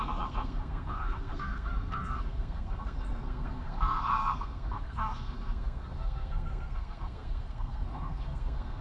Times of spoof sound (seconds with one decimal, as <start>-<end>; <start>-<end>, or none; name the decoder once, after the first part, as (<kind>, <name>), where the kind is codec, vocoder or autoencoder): 0.0-8.8 (codec, SNAC)